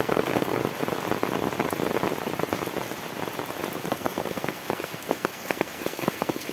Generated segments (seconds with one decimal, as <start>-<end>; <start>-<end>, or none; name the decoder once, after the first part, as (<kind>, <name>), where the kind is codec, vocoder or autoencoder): 0.0-0.6 (codec, SNAC); 3.8-6.5